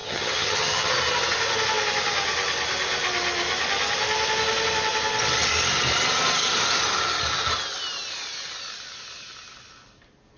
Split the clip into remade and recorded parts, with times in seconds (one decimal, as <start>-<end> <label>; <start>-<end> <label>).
0.0-0.9 remade; 0.9-10.4 recorded